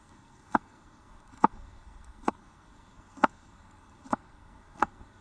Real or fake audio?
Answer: fake